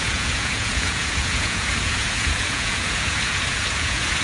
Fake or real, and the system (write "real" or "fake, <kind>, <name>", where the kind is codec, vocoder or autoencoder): fake, vocoder, Vocos